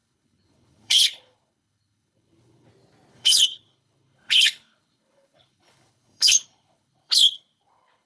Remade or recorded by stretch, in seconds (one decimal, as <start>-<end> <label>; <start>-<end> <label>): 0.0-2.7 remade; 2.7-3.1 recorded; 3.1-8.1 remade

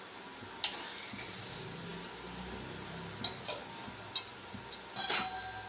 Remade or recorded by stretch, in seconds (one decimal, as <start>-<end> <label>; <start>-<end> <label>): 0.0-5.7 recorded

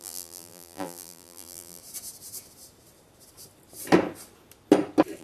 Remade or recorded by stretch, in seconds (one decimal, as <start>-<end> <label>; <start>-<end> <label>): 0.0-1.8 remade; 1.8-5.2 recorded

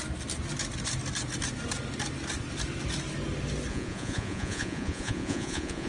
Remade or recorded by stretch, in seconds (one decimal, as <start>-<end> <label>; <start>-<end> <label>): 0.0-3.7 recorded; 3.7-5.9 remade

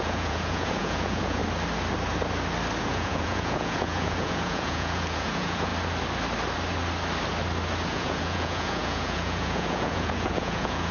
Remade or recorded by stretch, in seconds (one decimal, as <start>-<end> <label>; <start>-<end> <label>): 0.0-1.4 remade; 1.4-2.8 recorded; 2.8-5.7 remade; 5.7-7.9 recorded; 7.9-10.9 remade

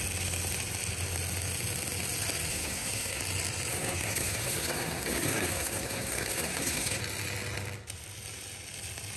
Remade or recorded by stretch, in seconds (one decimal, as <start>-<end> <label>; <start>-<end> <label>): 0.0-2.5 recorded; 2.5-3.2 remade; 3.2-3.7 recorded; 3.7-7.0 remade; 7.0-9.2 recorded

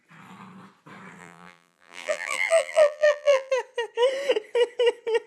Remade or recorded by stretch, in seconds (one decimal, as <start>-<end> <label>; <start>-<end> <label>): 0.0-1.2 recorded; 1.2-3.5 remade; 3.5-5.3 recorded

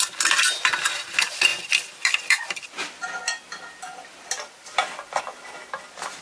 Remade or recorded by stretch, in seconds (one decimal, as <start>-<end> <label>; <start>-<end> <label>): 0.0-1.5 recorded; 1.5-5.2 remade; 5.2-6.2 recorded